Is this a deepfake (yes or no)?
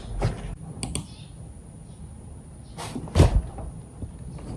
no